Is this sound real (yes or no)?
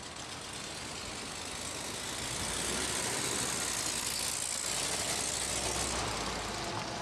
yes